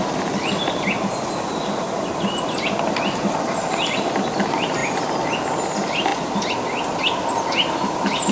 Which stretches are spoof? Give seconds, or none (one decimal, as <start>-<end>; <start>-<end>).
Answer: none